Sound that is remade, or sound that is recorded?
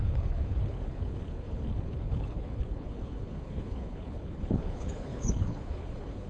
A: remade